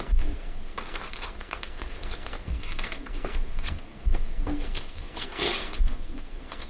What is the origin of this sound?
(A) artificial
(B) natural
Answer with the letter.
A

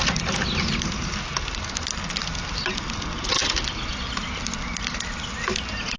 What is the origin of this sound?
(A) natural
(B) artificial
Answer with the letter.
A